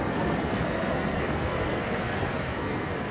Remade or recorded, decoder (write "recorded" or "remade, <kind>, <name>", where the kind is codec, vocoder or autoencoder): remade, codec, SNAC